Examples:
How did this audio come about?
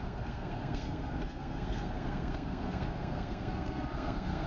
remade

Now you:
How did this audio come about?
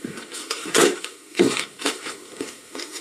remade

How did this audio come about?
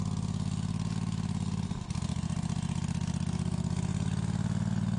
recorded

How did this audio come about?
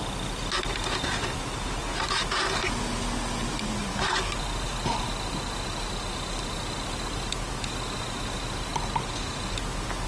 recorded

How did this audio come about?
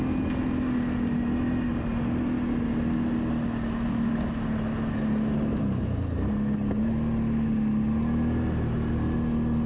recorded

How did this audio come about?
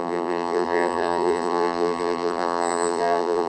remade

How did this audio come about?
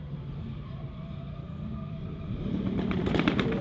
remade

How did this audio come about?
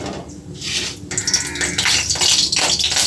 recorded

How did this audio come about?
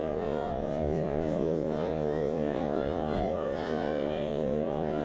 remade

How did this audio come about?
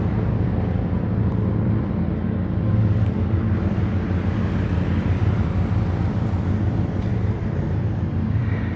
remade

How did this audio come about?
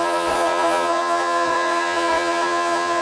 remade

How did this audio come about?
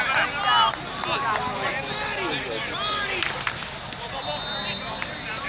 recorded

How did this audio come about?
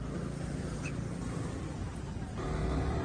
recorded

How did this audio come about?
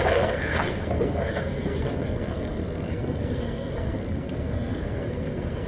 remade